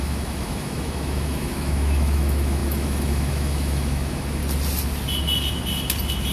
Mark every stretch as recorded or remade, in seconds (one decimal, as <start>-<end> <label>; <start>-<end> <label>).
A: 0.0-4.4 remade; 4.4-6.3 recorded